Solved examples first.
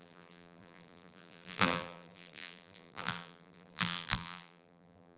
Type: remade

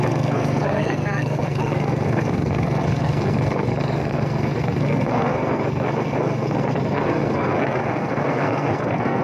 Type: remade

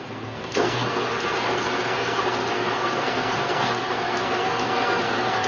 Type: remade